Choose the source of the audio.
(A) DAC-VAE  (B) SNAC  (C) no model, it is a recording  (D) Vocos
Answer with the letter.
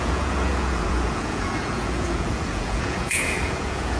D